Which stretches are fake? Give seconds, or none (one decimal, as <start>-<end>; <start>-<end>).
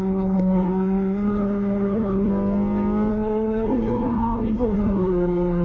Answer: 0.0-2.3; 3.1-5.6